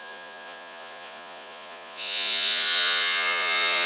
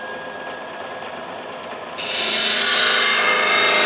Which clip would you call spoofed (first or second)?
first